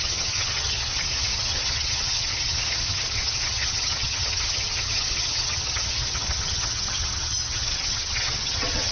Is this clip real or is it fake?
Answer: fake